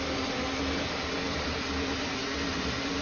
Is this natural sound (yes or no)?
yes